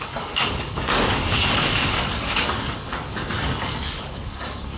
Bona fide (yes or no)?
no